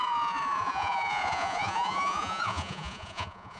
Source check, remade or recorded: remade